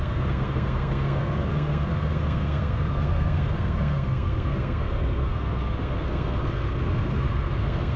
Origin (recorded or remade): remade